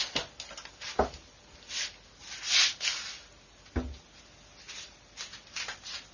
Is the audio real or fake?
real